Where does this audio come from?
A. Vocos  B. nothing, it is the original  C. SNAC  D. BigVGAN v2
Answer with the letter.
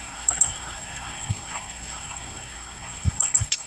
C